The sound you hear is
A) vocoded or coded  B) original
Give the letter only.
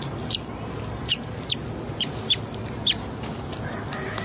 B